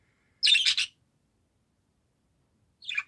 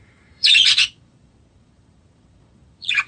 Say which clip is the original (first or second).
first